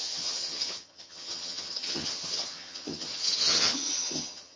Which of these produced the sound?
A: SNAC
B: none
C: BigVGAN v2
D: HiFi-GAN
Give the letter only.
D